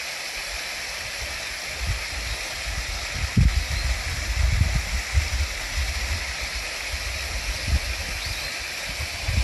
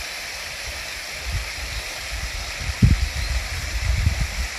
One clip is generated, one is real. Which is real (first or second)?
first